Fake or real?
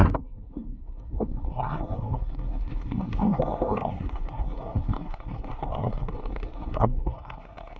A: fake